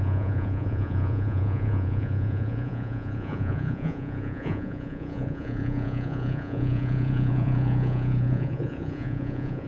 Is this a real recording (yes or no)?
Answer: no